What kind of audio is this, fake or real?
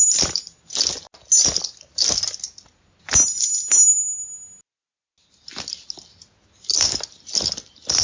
real